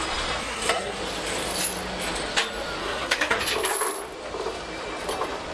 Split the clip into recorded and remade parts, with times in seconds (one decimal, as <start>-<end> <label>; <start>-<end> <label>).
0.0-0.4 recorded; 0.4-1.0 remade; 1.0-2.8 recorded; 2.8-3.4 remade; 3.4-5.5 recorded